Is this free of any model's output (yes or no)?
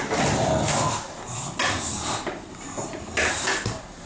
yes